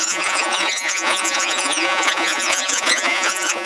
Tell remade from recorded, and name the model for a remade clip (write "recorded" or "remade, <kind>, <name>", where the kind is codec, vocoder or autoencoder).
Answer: remade, vocoder, Vocos